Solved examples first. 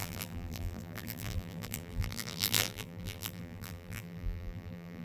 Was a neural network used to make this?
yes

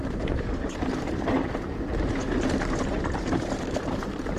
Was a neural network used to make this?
yes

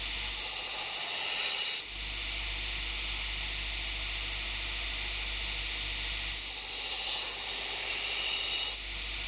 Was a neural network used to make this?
no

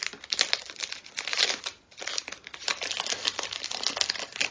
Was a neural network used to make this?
no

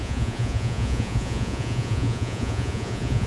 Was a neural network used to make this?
yes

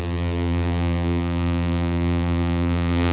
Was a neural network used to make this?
yes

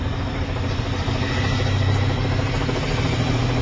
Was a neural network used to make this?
no